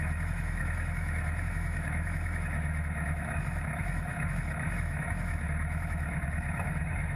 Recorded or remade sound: remade